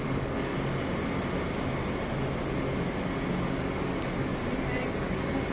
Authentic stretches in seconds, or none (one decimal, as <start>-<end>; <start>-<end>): 0.5-3.5; 4.3-4.9